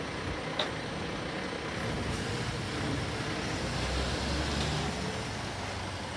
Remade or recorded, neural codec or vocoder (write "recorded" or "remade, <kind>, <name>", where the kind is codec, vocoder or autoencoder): recorded